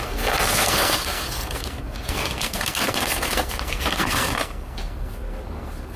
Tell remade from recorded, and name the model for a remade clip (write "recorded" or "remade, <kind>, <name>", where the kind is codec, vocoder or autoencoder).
remade, codec, SNAC